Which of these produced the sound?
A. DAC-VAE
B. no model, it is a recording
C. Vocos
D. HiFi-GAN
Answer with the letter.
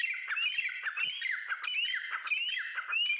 B